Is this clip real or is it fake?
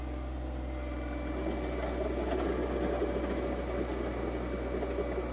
real